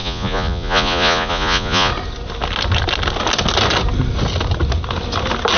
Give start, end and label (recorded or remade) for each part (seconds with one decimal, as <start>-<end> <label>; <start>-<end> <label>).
0.0-1.9 remade; 1.9-5.6 recorded